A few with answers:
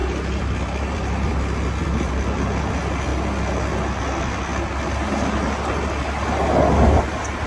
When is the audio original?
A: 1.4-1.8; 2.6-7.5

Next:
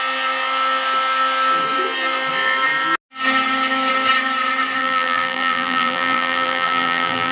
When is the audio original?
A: 0.0-4.8

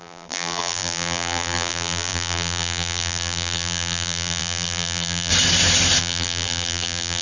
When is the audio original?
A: 5.3-6.0

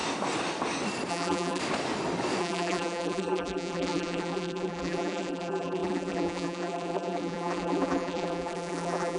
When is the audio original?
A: 0.0-1.1; 1.6-2.4

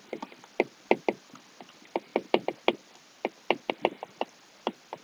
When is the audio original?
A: 0.0-5.0

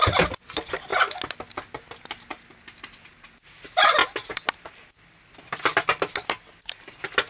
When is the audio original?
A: 0.0-7.3

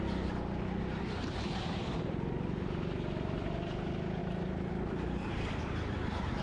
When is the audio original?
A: 0.0-4.2; 5.6-6.4

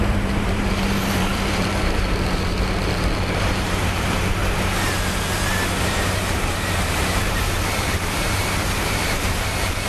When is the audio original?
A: 4.4-5.8